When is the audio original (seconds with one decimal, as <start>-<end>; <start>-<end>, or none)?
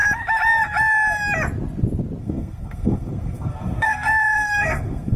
0.0-2.2